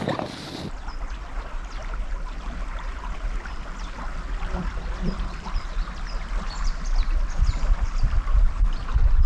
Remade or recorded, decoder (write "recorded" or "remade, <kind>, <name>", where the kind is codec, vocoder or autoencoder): recorded